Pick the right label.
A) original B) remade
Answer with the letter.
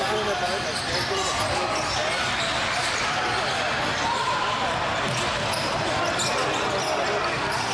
A